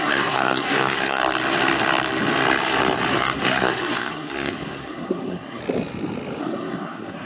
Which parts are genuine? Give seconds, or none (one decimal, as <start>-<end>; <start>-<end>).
1.2-3.1; 5.6-6.4